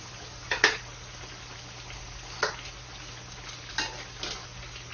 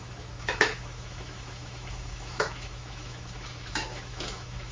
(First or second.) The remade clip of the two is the second